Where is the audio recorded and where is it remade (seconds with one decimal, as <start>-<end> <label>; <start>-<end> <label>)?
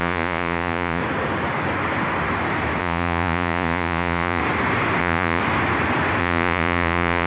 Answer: 0.0-1.0 remade; 1.0-2.8 recorded; 2.8-4.4 remade; 4.4-5.0 recorded; 5.0-5.4 remade; 5.4-6.2 recorded; 6.2-7.3 remade